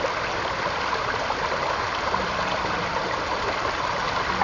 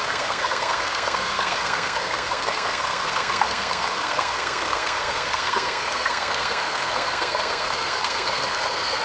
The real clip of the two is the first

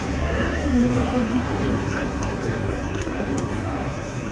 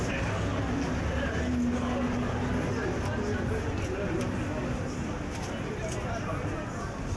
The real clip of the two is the second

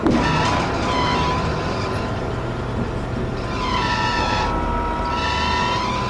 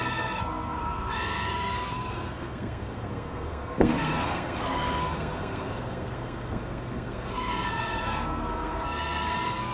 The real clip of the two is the first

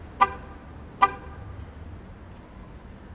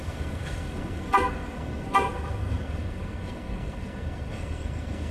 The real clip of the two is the first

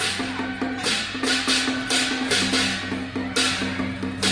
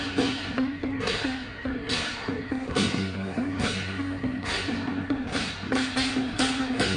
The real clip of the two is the first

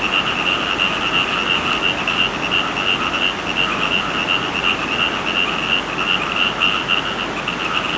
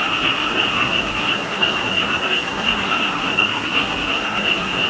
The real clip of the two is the first